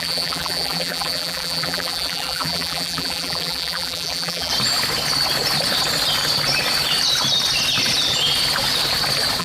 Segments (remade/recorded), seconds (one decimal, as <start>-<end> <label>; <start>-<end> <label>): 0.0-4.5 remade; 4.5-9.4 recorded